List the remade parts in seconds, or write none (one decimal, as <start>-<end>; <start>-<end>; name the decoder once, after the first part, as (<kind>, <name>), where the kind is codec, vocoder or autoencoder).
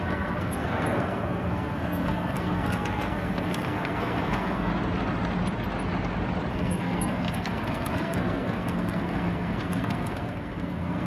0.0-4.7 (codec, SNAC); 6.5-11.1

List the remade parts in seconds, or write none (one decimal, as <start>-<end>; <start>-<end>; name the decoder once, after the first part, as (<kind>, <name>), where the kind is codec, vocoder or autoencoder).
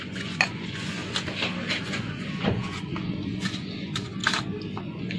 0.0-1.0 (vocoder, Vocos); 1.8-4.2; 4.8-5.2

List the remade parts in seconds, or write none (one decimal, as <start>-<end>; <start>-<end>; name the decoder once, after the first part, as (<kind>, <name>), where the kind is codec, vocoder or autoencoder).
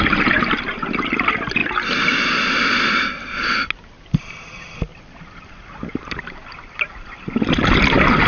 4.9-7.6 (vocoder, BigVGAN v2)